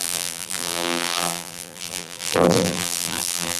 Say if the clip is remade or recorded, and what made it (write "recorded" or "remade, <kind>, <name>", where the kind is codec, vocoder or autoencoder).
remade, vocoder, BigVGAN v2